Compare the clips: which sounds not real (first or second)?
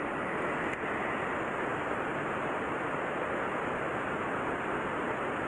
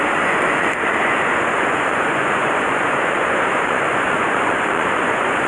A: second